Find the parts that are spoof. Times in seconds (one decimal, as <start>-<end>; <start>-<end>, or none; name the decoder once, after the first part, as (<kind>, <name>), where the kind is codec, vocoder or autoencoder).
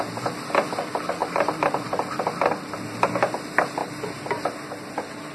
1.2-3.1 (vocoder, BigVGAN v2)